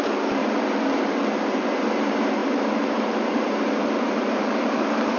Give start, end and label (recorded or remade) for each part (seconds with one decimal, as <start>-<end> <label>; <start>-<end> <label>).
0.0-0.4 remade; 0.4-2.0 recorded; 2.0-5.2 remade